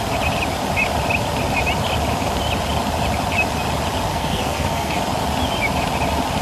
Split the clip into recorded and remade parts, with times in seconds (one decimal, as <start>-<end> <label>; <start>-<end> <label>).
0.0-4.1 recorded; 4.1-5.0 remade; 5.0-6.4 recorded